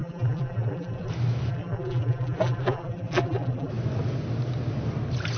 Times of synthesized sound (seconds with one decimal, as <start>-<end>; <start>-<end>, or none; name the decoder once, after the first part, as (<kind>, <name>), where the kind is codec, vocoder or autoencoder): 0.0-1.1 (vocoder, BigVGAN v2); 1.5-3.7